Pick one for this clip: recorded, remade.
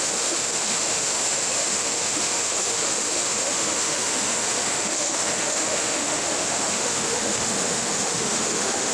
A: remade